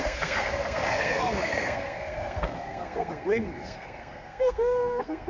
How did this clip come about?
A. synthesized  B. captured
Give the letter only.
A